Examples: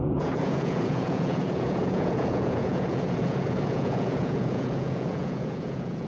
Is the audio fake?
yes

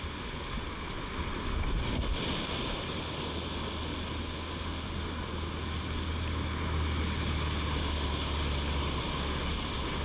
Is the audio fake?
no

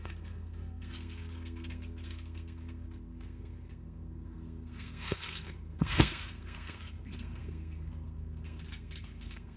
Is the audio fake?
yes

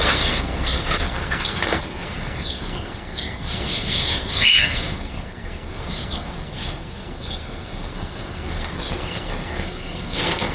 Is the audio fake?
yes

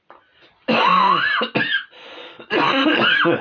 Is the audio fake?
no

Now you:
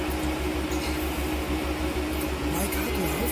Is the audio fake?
no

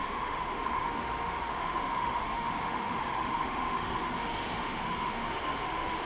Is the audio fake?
yes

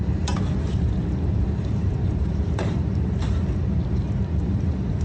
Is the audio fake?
yes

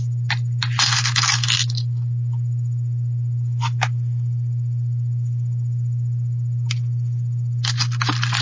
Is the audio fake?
no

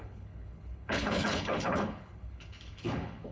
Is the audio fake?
yes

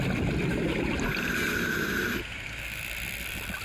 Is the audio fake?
no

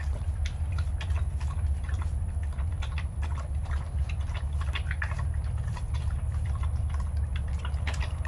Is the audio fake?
no